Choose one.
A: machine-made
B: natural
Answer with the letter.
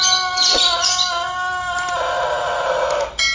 B